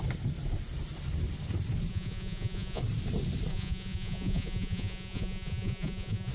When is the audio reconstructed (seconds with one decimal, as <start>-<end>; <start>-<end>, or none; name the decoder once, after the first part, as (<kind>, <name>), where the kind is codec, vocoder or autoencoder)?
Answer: 1.9-2.8 (vocoder, Vocos); 3.5-6.3